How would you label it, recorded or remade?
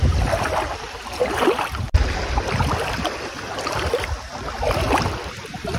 recorded